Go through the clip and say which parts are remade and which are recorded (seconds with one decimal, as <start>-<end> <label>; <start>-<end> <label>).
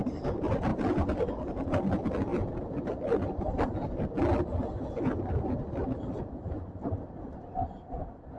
0.0-8.4 recorded